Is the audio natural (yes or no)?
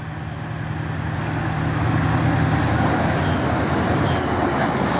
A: yes